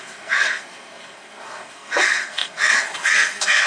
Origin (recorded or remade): remade